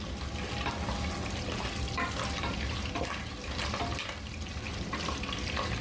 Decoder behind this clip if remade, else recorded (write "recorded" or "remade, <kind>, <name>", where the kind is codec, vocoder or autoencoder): recorded